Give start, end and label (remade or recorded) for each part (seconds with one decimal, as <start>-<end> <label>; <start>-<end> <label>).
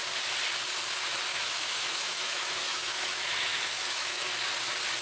0.0-1.3 recorded; 1.3-4.3 remade; 4.3-5.0 recorded